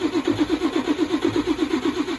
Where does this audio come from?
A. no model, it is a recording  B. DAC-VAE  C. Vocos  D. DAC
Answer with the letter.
A